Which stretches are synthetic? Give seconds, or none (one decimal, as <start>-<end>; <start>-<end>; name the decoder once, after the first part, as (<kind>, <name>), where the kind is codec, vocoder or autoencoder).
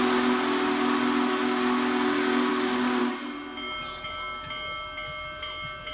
none